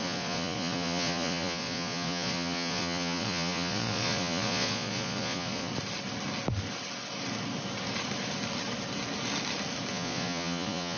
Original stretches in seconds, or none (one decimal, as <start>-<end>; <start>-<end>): 5.7-9.9